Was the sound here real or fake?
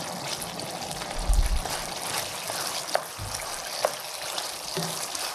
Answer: real